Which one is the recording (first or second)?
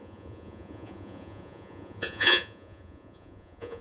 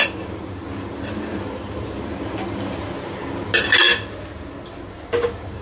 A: second